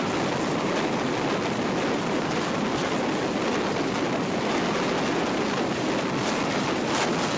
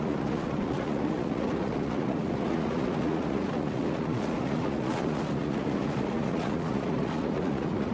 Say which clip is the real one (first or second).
first